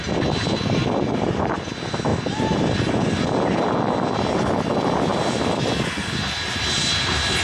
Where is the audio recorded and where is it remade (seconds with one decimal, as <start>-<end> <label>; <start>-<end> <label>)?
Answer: 0.0-7.4 recorded